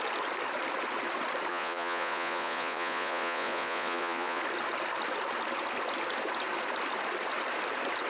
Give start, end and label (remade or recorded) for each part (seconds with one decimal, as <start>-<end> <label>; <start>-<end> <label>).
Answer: 0.0-1.5 recorded; 1.5-4.4 remade; 4.4-8.1 recorded